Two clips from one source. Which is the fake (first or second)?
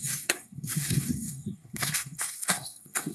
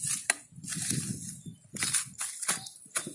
first